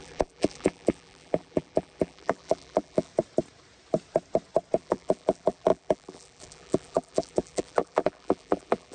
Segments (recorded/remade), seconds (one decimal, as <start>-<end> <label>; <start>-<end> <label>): 0.0-3.1 remade; 3.1-4.8 recorded; 4.8-8.9 remade